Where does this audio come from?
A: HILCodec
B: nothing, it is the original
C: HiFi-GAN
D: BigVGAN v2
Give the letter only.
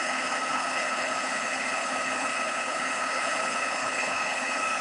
A